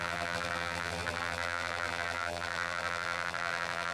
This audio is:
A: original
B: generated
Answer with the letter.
B